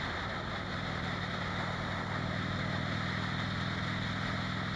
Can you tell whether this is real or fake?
real